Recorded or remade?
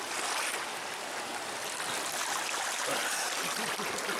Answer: recorded